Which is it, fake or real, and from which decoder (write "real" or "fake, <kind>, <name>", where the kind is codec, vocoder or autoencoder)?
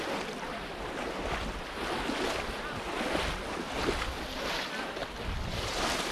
real